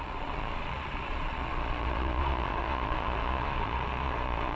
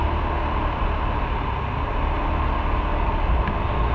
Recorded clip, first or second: second